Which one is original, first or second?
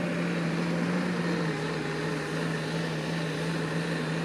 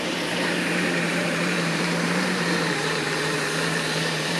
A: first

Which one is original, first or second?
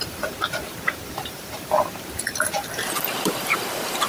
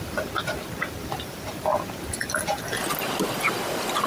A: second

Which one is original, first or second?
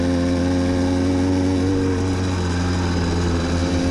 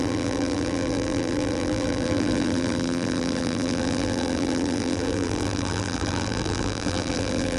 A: first